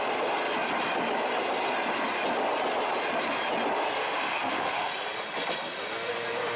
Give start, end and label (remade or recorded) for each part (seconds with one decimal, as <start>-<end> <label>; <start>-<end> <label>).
0.0-4.0 recorded; 4.0-4.9 remade; 4.9-6.6 recorded